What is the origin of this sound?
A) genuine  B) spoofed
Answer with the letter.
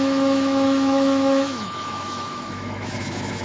B